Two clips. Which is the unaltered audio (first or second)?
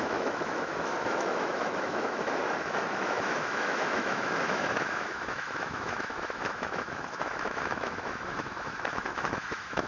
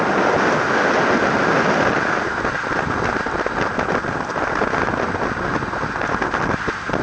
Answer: second